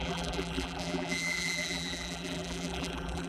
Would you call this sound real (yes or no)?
no